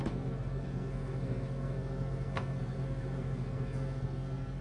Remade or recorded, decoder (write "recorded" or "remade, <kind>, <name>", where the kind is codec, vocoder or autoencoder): remade, codec, SNAC